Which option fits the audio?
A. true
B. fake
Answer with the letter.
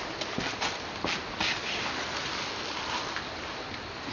A